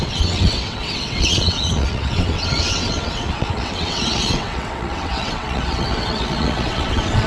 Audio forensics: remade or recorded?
remade